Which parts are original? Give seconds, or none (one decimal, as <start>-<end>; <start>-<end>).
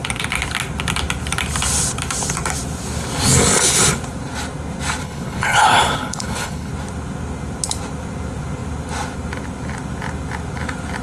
0.0-5.0; 6.7-11.0